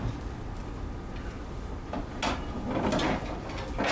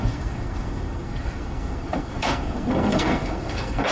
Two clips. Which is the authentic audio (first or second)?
first